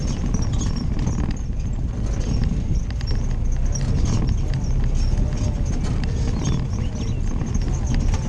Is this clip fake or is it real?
real